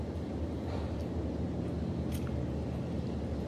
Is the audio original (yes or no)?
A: yes